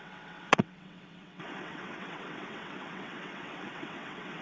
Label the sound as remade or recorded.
remade